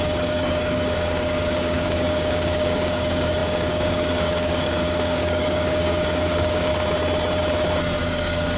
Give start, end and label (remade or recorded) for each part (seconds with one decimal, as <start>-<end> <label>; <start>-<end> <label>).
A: 0.0-6.7 remade; 6.7-8.0 recorded; 8.0-8.6 remade